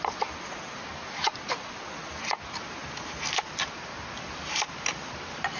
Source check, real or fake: fake